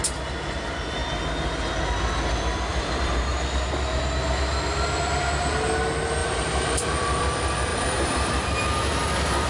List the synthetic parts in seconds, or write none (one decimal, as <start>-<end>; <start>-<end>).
2.7-4.0; 6.2-7.2; 7.7-8.4